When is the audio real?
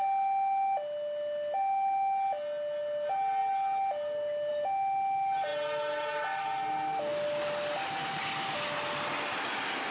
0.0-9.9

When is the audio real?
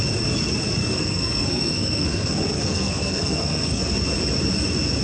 0.0-0.8; 3.8-5.0